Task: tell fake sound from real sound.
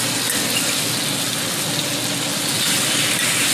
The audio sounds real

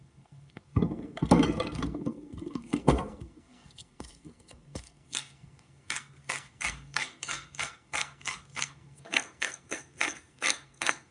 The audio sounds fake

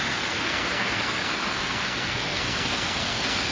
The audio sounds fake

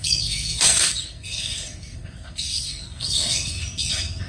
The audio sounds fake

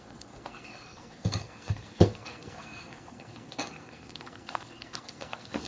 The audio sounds fake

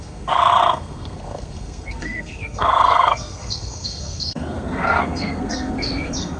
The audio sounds fake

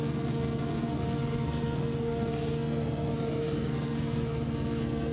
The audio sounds fake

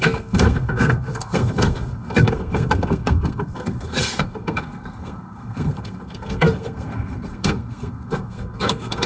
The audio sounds fake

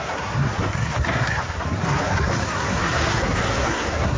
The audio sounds fake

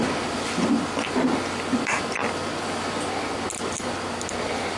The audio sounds real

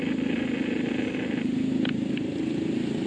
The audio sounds real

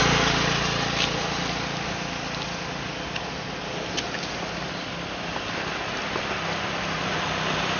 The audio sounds real